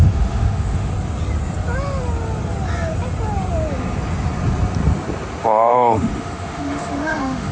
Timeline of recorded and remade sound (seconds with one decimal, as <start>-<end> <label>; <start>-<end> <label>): 0.0-0.9 remade; 0.9-5.4 recorded; 5.4-7.5 remade